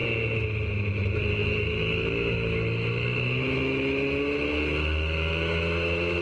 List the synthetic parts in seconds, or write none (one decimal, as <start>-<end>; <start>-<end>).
0.7-6.2

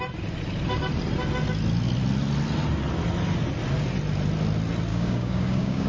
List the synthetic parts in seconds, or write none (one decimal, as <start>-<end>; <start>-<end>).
4.9-5.9

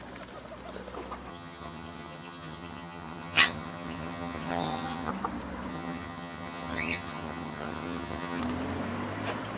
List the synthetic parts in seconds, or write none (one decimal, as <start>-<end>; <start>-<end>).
1.3-5.1; 5.7-8.4

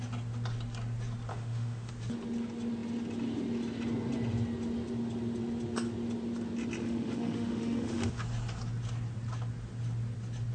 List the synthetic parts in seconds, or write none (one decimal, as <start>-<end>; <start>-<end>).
1.3-1.9; 6.8-8.2

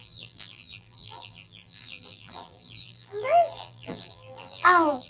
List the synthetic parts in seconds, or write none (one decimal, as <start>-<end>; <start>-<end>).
0.0-5.1

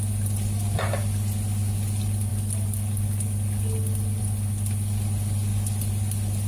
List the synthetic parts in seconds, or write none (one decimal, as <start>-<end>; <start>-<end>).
none